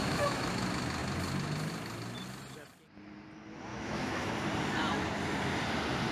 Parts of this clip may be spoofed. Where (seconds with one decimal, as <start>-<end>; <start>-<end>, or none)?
0.0-0.5; 3.7-4.3